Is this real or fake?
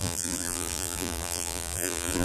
fake